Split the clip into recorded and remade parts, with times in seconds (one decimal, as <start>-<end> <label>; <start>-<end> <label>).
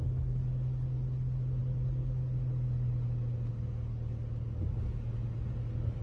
0.0-6.0 recorded